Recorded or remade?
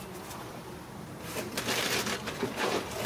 recorded